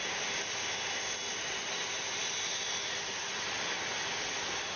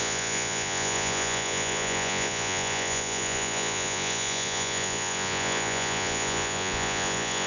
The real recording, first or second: first